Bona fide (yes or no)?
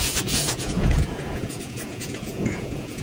no